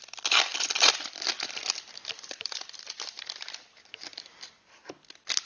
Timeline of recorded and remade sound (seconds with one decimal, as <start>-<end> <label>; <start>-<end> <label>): 0.0-0.5 recorded; 0.5-2.9 remade; 2.9-4.1 recorded; 4.1-4.8 remade; 4.8-5.4 recorded

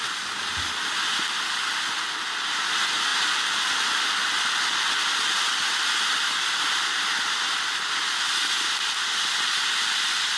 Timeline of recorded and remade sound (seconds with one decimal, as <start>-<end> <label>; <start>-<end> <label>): 0.0-10.4 recorded

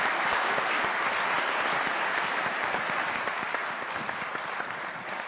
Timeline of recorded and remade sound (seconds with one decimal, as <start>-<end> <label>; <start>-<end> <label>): 0.0-5.3 recorded

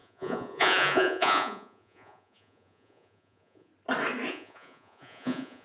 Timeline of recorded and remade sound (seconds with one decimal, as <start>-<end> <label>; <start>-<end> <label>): 0.0-3.7 remade; 3.7-4.3 recorded; 4.3-5.6 remade

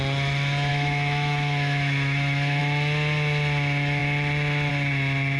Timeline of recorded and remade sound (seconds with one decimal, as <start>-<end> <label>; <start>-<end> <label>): 0.0-0.7 recorded; 0.7-2.6 remade; 2.6-5.4 recorded

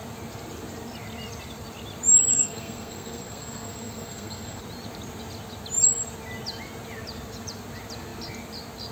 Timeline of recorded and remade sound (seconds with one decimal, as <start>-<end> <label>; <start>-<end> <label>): 0.0-2.3 recorded; 2.3-4.6 remade; 4.6-8.9 recorded

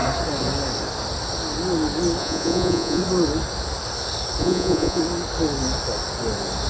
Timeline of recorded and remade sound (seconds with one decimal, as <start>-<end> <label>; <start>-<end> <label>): 0.0-2.2 recorded; 2.2-3.0 remade; 3.0-4.4 recorded; 4.4-5.0 remade; 5.0-6.7 recorded

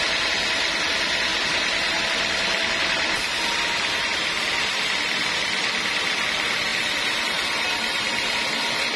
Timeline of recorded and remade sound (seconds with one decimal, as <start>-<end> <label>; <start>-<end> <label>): 0.0-1.3 recorded; 1.3-2.0 remade; 2.0-9.0 recorded